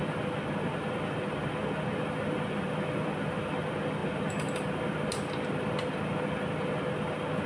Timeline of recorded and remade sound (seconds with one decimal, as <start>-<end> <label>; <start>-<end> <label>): 0.0-7.5 recorded